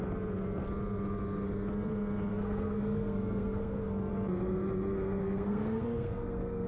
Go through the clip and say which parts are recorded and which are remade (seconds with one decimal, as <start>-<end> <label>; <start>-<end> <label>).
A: 0.0-2.3 recorded; 2.3-4.1 remade; 4.1-5.2 recorded; 5.2-6.7 remade